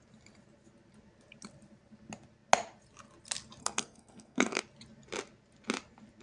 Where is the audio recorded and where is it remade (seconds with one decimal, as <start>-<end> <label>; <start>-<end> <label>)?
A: 0.0-3.6 recorded; 3.6-4.6 remade; 4.6-6.2 recorded